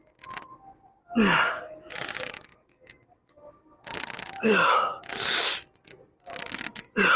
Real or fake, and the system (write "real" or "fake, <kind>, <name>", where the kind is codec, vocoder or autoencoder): real